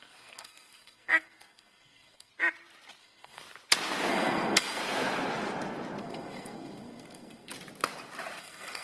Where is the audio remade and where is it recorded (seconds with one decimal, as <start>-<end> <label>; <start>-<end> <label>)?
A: 0.0-2.3 remade; 2.3-3.0 recorded; 3.0-3.4 remade; 3.4-4.1 recorded; 4.1-4.8 remade; 4.8-6.0 recorded; 6.0-7.5 remade; 7.5-8.4 recorded; 8.4-8.8 remade